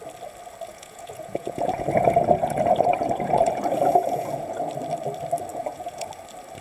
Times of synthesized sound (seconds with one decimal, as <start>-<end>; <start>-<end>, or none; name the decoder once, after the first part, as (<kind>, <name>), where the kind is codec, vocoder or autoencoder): 0.7-4.7 (vocoder, Vocos); 5.5-6.1